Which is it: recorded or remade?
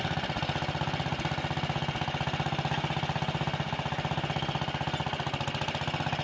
recorded